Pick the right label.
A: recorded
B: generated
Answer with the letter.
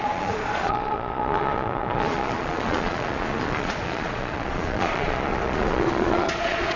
B